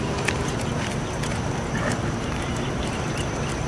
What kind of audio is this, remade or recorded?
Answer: remade